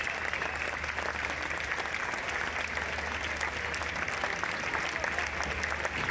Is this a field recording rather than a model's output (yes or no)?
yes